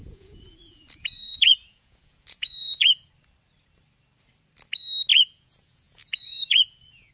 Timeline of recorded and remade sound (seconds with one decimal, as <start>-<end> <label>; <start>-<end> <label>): 0.0-3.1 remade; 3.1-5.1 recorded; 5.1-7.1 remade